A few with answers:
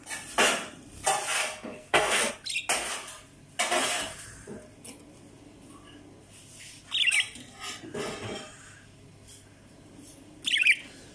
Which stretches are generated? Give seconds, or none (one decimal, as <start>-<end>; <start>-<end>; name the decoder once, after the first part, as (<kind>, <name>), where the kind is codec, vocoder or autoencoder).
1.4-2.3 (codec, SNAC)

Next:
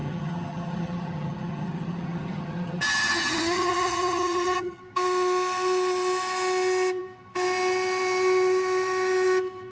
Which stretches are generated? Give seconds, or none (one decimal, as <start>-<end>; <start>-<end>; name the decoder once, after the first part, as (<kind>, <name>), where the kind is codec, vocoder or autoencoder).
0.0-4.8 (vocoder, HiFi-GAN)

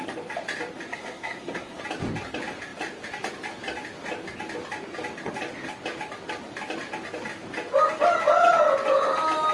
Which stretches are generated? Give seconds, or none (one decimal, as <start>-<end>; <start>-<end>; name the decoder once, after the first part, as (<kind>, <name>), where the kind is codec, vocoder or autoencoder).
0.9-1.8 (codec, SNAC)

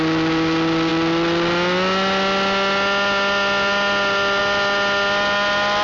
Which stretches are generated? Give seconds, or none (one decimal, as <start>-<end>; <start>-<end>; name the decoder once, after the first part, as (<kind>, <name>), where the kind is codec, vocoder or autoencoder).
none

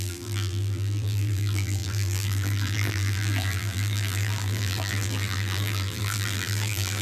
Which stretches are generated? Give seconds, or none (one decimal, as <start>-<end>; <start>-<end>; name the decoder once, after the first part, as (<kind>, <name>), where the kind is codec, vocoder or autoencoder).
0.0-7.0 (vocoder, BigVGAN v2)

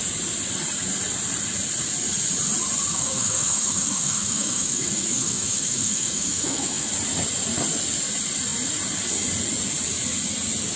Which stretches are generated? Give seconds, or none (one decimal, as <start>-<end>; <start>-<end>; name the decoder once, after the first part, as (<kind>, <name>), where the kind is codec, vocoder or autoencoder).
2.9-6.9 (autoencoder, DAC-VAE)

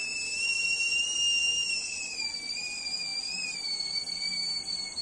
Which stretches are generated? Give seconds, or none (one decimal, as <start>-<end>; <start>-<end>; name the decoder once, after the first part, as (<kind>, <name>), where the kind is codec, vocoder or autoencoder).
none

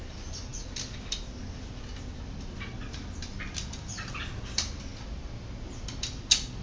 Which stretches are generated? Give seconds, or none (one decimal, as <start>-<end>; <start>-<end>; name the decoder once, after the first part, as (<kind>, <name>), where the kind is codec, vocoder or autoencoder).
none